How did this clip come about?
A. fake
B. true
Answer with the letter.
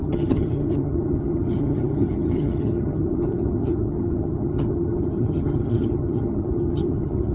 A